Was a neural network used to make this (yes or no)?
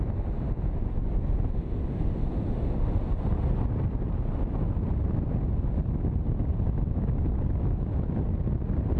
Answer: no